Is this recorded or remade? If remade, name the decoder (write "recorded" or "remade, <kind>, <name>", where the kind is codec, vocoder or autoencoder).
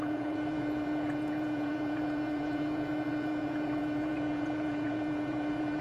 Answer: remade, vocoder, Vocos